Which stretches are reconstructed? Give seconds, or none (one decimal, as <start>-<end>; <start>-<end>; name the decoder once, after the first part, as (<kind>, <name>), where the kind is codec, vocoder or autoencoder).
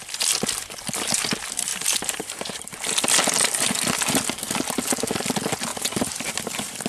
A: 1.7-2.8 (vocoder, BigVGAN v2); 5.7-6.3